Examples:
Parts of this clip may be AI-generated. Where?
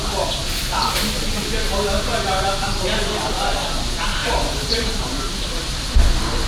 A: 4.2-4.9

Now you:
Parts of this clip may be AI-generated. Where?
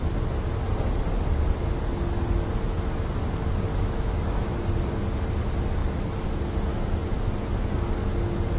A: 3.7-4.6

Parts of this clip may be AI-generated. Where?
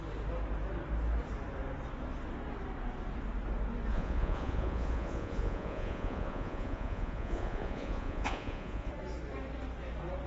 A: 3.9-8.9